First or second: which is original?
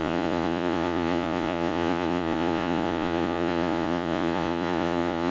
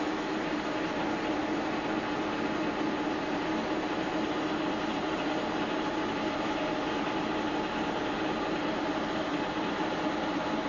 second